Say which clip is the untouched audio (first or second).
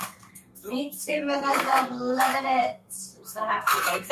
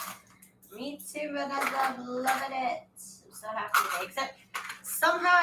second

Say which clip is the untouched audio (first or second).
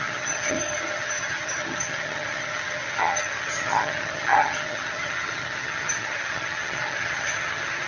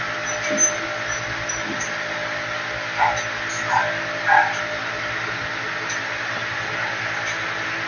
second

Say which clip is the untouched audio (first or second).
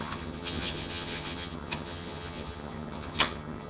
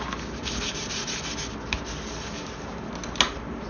second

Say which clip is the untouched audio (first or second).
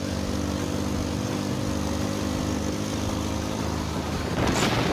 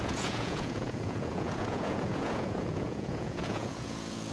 first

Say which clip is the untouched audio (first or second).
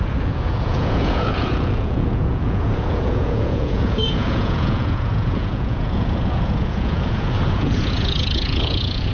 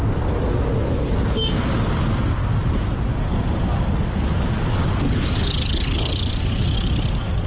second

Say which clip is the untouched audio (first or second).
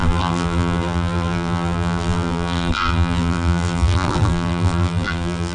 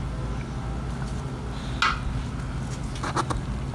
second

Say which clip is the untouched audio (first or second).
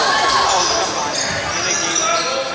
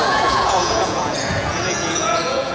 first